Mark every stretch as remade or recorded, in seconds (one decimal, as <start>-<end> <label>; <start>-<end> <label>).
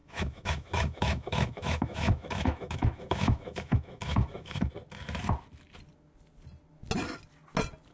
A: 0.0-4.7 remade; 4.7-7.9 recorded